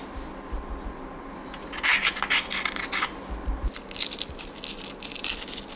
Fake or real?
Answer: real